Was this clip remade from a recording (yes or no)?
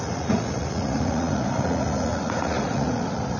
yes